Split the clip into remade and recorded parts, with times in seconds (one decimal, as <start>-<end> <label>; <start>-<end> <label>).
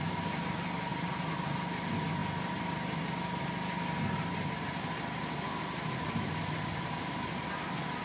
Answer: 0.0-0.9 recorded; 0.9-1.4 remade; 1.4-8.0 recorded